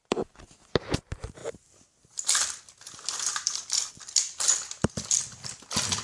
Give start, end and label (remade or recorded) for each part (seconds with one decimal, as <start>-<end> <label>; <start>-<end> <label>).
0.0-6.0 recorded